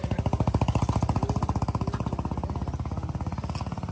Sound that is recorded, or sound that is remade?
recorded